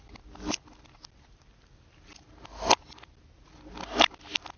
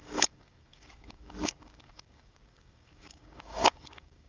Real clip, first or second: first